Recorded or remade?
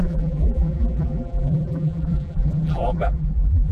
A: remade